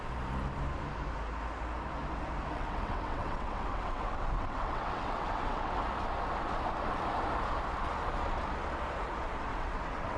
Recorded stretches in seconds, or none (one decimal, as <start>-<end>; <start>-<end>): 0.0-2.5; 5.8-9.5